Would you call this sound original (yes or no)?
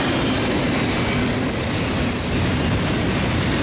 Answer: yes